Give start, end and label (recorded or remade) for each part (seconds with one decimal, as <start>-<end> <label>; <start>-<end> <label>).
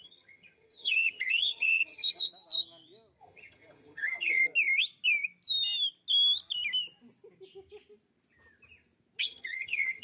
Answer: 0.0-2.3 remade; 2.3-3.2 recorded; 3.2-4.4 remade; 4.4-9.2 recorded; 9.2-10.0 remade